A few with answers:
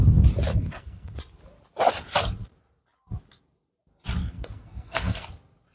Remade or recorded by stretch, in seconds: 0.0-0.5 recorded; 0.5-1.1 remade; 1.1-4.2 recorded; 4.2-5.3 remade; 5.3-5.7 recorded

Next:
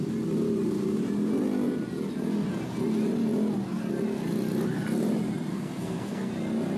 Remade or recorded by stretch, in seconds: 0.0-5.5 recorded; 5.5-6.3 remade; 6.3-6.8 recorded

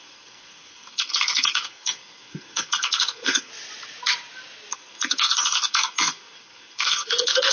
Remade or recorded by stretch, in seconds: 0.0-3.5 remade; 3.5-4.7 recorded; 4.7-7.5 remade